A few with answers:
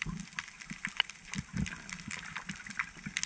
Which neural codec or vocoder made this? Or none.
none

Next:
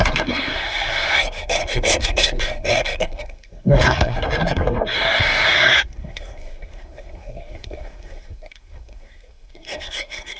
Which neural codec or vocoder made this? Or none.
codec, SNAC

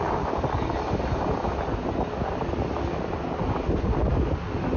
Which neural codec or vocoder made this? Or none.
none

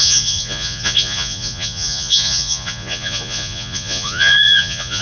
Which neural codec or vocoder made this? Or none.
vocoder, Vocos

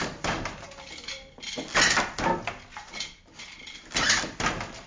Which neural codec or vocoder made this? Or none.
none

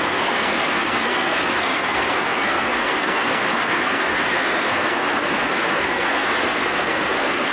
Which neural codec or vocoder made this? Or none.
codec, SNAC